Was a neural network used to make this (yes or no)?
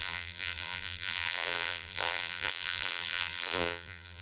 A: yes